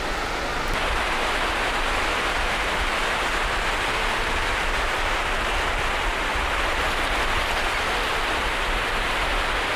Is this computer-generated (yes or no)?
no